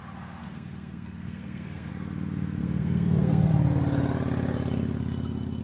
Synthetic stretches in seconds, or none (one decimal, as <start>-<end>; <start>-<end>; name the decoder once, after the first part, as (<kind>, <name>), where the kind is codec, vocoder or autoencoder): 0.4-1.9 (codec, SNAC); 2.6-3.5